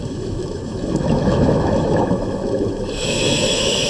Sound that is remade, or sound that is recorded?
remade